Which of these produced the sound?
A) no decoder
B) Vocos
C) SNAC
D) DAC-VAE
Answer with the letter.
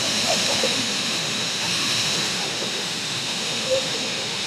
D